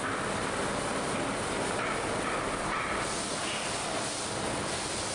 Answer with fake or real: real